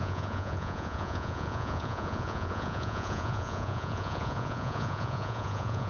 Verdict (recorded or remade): remade